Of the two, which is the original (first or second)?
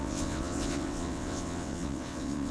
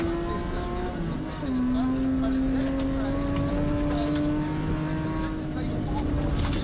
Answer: second